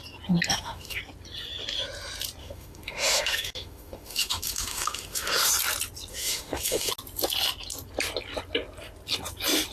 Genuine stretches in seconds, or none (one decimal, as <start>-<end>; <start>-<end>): 0.0-0.5; 1.0-2.4; 5.5-6.1; 6.9-9.7